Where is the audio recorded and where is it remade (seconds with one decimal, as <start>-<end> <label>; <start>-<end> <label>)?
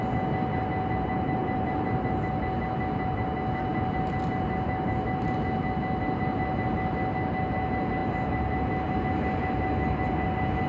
0.0-10.7 recorded